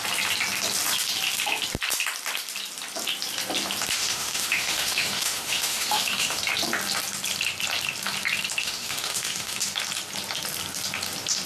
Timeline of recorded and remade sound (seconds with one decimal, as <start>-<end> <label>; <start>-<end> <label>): 0.0-4.0 recorded; 4.0-6.4 remade; 6.4-8.6 recorded; 8.6-9.6 remade; 9.6-11.5 recorded